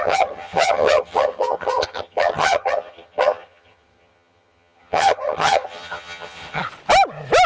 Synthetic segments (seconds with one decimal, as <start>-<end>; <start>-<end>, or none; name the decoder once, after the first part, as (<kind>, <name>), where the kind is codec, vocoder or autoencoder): 0.0-6.6 (vocoder, HiFi-GAN)

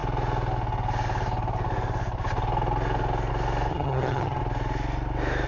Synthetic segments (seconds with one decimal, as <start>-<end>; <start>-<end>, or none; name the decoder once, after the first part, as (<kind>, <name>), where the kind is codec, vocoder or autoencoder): 3.7-4.4 (vocoder, HiFi-GAN)

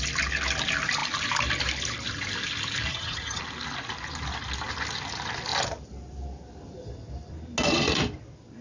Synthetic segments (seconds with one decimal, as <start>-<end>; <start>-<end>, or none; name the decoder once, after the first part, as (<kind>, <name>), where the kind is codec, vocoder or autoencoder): 2.9-3.4 (vocoder, HiFi-GAN)

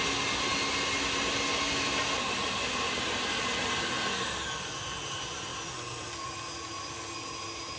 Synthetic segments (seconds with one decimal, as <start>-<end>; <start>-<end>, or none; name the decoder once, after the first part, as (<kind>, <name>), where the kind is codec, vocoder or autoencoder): none